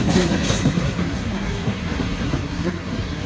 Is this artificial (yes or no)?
yes